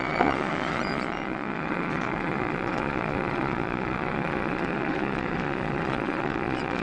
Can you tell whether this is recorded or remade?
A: remade